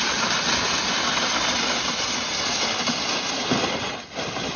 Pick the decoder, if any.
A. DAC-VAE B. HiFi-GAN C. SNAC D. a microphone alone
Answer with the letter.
D